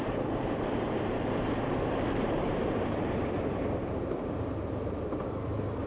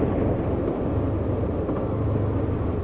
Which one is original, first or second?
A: second